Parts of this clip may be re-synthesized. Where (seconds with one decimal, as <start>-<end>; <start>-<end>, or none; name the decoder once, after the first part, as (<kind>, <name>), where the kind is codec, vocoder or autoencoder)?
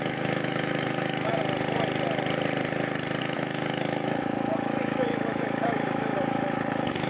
0.0-1.3 (autoencoder, DAC-VAE); 3.2-7.1